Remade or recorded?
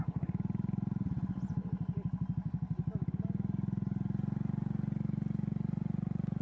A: recorded